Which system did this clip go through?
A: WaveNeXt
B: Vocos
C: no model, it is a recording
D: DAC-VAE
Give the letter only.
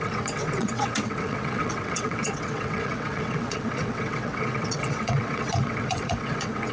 A